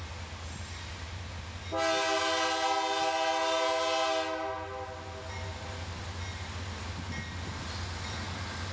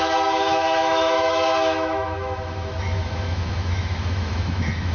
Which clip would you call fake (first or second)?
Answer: second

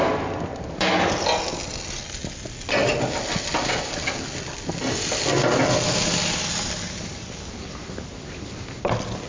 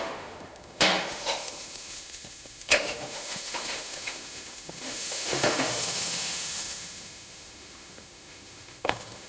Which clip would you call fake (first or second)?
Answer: second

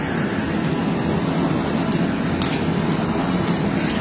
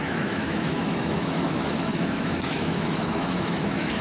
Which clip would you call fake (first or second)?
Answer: second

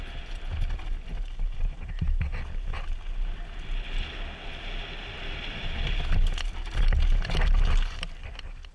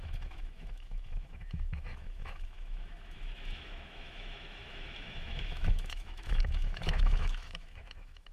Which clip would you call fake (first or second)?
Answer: second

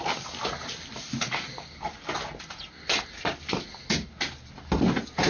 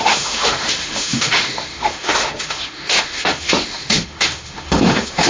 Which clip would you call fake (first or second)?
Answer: second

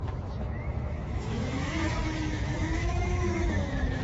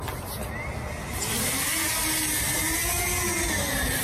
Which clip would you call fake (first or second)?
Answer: first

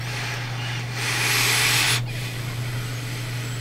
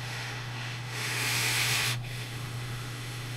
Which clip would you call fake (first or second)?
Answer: second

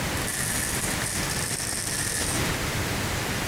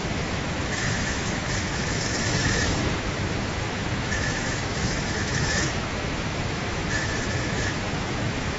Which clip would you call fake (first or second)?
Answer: second